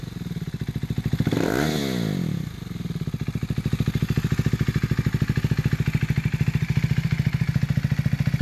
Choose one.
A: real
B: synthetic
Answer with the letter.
A